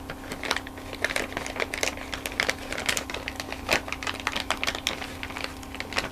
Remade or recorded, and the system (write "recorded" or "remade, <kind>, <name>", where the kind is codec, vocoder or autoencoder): recorded